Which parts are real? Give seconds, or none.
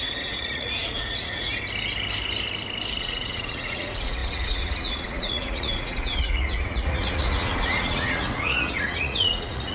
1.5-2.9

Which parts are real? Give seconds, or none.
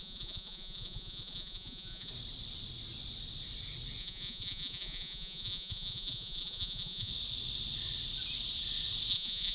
2.1-4.0; 7.1-9.1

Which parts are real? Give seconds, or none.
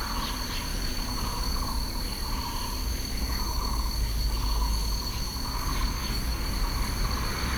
0.0-0.7; 1.7-2.8; 6.5-7.6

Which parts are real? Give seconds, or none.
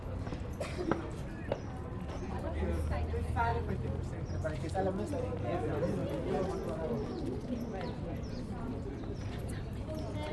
0.0-10.3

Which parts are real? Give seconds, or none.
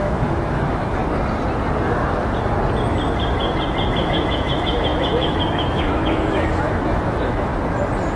1.0-4.0; 7.5-8.2